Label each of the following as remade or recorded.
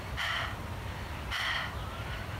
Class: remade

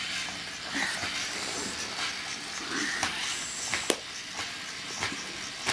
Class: remade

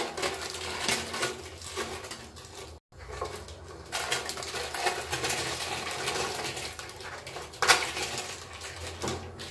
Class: recorded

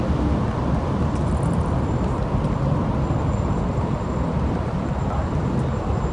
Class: remade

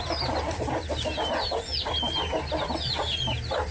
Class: recorded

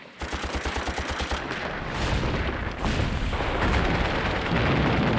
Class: recorded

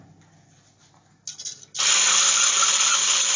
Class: recorded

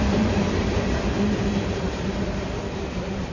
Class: remade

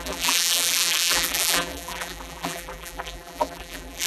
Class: remade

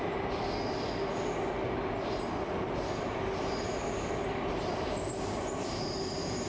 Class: recorded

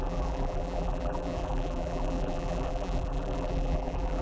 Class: remade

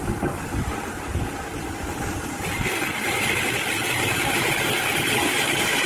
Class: recorded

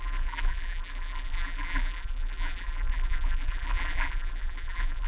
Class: remade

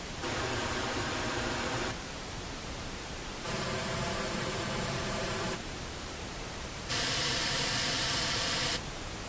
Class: remade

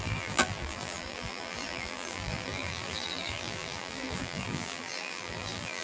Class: remade